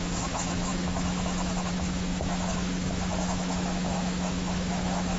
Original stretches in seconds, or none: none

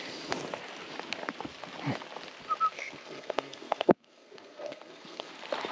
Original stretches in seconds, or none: 0.0-2.7; 5.3-5.7

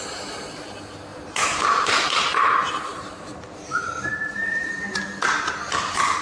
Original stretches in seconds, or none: 0.0-1.1; 2.4-2.9; 4.8-6.2

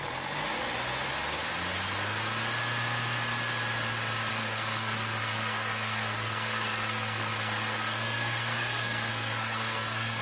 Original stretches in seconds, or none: 0.0-4.3

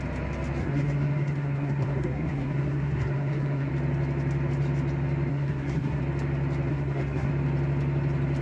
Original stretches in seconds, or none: 0.0-0.6; 3.7-5.3; 6.0-6.7; 7.3-8.4